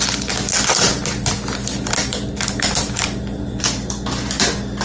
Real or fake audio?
real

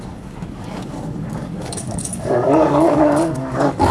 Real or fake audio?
fake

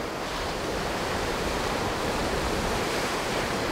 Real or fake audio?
fake